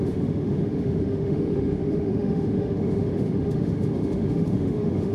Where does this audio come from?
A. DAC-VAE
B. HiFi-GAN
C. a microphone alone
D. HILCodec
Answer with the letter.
A